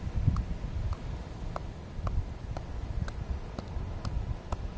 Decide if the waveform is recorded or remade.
recorded